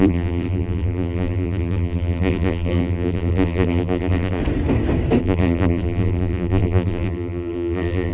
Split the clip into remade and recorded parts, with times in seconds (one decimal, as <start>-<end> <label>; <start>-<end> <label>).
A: 0.0-4.4 remade; 4.4-5.2 recorded; 5.2-8.1 remade